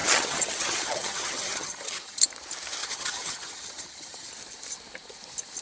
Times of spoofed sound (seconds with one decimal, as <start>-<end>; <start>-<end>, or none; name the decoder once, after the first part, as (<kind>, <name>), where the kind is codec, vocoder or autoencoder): 0.0-2.2 (vocoder, HiFi-GAN); 2.8-4.3